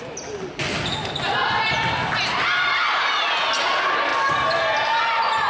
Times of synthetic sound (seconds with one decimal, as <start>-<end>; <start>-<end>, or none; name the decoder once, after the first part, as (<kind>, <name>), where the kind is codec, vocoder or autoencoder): none